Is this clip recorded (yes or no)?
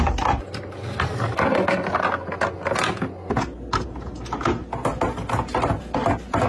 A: yes